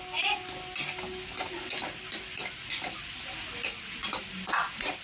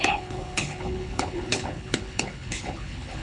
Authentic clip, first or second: first